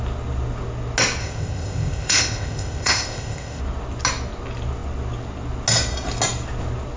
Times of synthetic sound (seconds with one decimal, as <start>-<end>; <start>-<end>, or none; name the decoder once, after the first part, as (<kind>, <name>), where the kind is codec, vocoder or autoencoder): 1.2-3.6 (codec, ZipCodec)